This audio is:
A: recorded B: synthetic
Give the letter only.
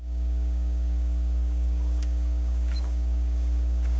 B